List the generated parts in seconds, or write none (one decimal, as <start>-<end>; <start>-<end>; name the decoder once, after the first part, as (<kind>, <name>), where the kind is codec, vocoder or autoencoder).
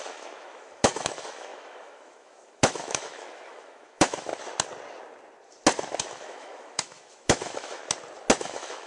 0.0-4.3 (autoencoder, DAC-VAE); 6.0-7.8; 8.4-8.9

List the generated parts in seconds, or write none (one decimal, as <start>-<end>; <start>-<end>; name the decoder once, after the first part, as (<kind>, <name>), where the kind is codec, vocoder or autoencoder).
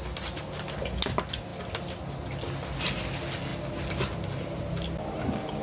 3.5-4.6 (vocoder, BigVGAN v2)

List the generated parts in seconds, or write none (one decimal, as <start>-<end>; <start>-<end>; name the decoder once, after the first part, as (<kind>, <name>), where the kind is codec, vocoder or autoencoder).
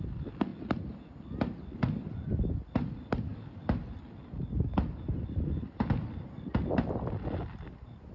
none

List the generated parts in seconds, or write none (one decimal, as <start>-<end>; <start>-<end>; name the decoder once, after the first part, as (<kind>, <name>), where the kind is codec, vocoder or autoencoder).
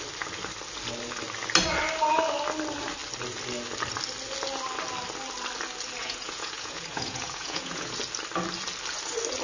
6.0-8.0 (vocoder, Vocos)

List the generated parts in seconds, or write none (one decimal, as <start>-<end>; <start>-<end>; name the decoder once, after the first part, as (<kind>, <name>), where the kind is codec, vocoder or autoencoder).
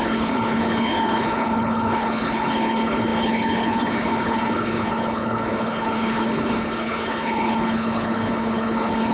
0.0-9.1 (codec, HILCodec)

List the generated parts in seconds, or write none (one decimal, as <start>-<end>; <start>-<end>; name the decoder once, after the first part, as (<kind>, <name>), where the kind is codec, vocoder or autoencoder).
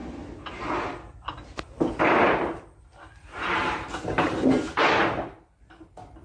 3.2-4.5 (vocoder, BigVGAN v2)